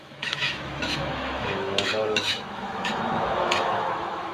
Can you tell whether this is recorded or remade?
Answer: remade